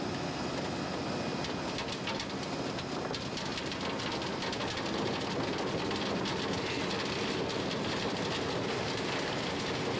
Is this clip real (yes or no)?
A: yes